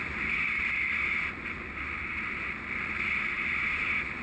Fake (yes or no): no